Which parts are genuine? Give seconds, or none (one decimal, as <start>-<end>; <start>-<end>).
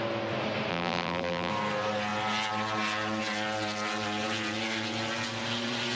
0.0-0.7; 1.5-6.0